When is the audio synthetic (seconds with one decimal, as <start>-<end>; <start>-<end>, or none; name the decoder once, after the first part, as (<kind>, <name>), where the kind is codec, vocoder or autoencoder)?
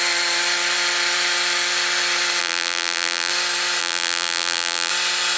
2.4-3.3 (vocoder, BigVGAN v2); 3.8-4.9